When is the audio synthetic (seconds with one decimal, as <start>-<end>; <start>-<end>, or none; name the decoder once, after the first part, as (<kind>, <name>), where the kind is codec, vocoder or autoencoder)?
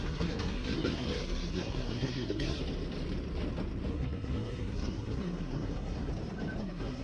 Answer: 0.0-2.6 (codec, SNAC); 3.9-6.1; 6.6-7.0